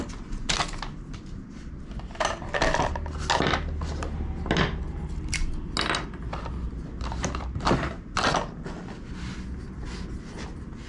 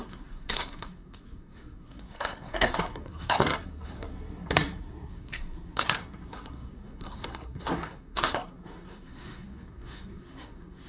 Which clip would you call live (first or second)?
first